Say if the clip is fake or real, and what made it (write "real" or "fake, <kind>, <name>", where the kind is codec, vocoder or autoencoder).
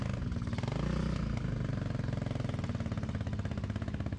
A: real